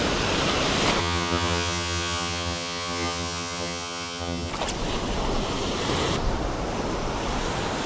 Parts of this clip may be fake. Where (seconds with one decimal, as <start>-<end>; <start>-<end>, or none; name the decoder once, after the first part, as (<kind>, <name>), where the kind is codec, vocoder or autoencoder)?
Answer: 1.0-4.5 (vocoder, HiFi-GAN)